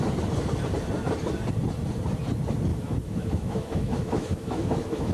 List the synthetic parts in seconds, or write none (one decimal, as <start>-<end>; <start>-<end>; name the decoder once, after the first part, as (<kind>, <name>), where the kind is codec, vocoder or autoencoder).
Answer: 2.7-5.1 (autoencoder, DAC-VAE)